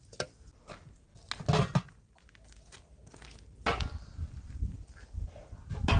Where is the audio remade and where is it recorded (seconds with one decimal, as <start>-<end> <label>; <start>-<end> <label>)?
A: 0.0-6.0 recorded